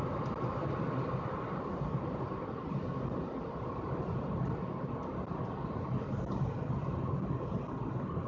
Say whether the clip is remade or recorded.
recorded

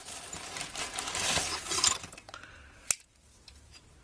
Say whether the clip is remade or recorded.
recorded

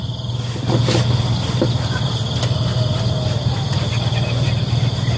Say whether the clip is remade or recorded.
recorded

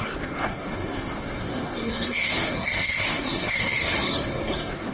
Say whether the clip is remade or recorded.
remade